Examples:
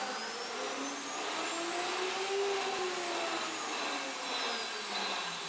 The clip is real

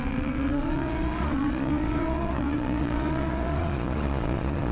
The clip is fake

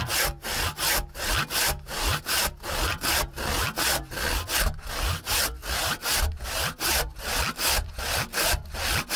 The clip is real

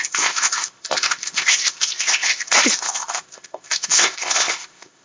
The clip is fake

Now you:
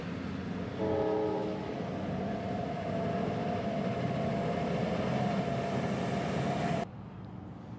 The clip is real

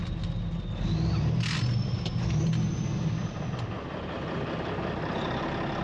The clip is real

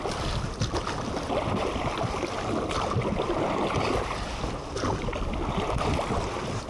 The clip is real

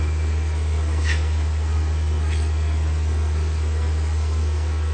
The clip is fake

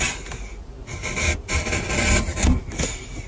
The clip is real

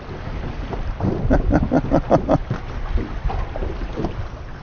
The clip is fake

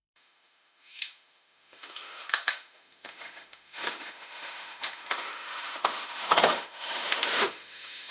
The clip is fake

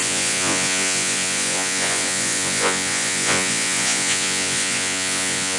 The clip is fake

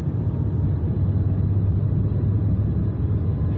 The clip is real